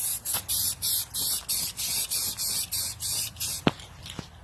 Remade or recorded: recorded